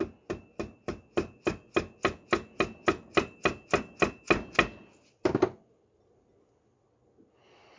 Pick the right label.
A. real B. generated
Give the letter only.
A